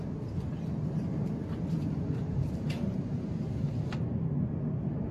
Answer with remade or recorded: remade